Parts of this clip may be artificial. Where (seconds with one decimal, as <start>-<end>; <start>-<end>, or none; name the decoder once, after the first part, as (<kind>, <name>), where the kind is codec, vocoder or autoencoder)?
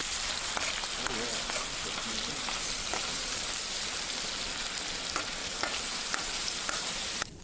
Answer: 1.3-4.0 (vocoder, BigVGAN v2); 5.4-7.4